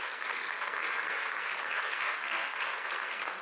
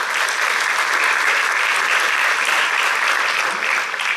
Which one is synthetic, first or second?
first